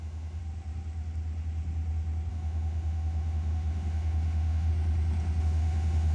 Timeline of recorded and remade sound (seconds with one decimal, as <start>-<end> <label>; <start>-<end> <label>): 0.0-0.4 remade; 0.4-2.3 recorded; 2.3-4.7 remade; 4.7-5.4 recorded; 5.4-6.1 remade